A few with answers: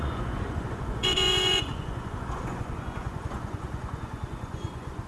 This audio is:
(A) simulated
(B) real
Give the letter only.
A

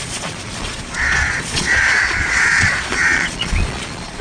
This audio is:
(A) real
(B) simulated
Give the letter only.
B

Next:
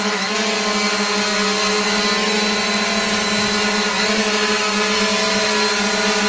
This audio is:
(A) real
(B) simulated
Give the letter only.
A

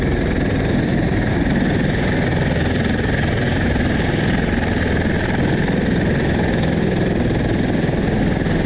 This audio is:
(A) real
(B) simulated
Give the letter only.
A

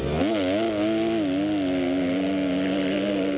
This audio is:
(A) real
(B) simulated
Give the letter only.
A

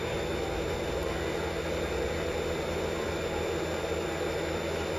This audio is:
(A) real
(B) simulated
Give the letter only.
A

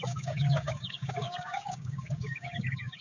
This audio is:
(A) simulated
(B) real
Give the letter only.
A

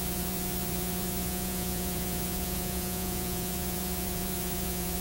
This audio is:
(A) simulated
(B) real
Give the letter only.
A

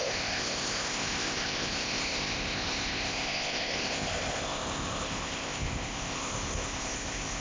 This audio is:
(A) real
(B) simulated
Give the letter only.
B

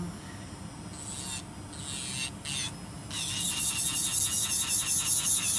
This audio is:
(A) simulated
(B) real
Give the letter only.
B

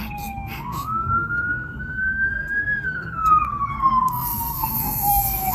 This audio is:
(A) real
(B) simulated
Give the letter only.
B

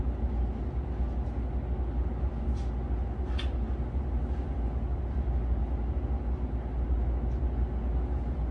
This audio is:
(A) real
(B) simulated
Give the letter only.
A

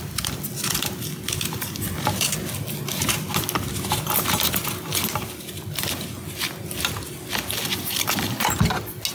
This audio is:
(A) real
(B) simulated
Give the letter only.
A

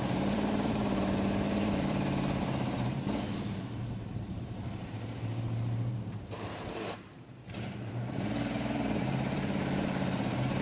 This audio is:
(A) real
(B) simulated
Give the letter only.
B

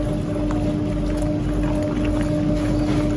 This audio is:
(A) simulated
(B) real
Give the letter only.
B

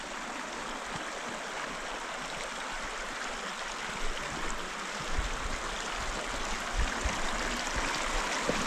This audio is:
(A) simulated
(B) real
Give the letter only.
B